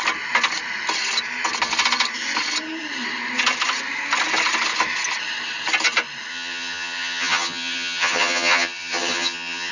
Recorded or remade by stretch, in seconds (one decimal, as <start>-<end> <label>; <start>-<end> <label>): 0.0-6.3 recorded; 6.3-9.7 remade